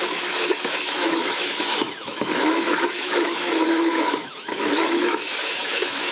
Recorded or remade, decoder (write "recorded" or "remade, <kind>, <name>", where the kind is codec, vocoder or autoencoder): remade, autoencoder, DAC-VAE